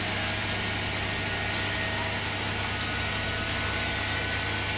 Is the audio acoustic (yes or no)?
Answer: yes